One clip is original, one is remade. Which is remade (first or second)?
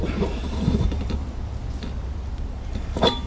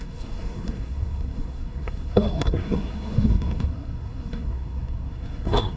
second